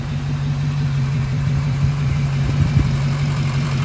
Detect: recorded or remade remade